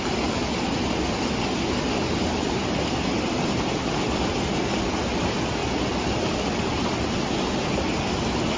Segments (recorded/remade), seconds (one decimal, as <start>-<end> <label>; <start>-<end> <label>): 0.0-5.6 recorded; 5.6-6.9 remade; 6.9-8.6 recorded